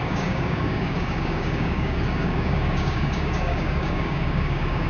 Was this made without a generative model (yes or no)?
no